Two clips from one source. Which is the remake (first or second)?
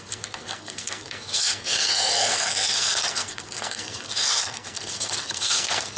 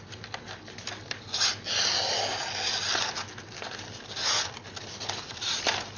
first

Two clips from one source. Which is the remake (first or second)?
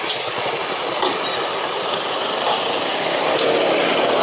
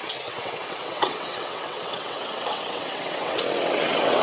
second